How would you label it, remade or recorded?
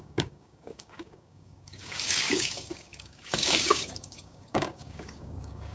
remade